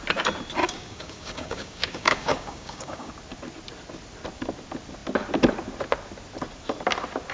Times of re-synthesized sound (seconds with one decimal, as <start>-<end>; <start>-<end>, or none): 0.6-3.1